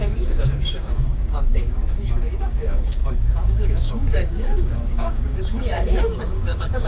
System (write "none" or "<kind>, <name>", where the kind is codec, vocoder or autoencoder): codec, DAC